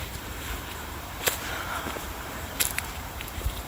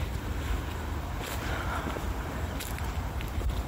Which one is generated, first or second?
first